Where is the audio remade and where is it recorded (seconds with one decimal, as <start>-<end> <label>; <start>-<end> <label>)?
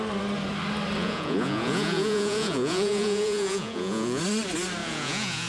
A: 0.0-1.0 recorded; 1.0-4.2 remade; 4.2-4.8 recorded; 4.8-5.5 remade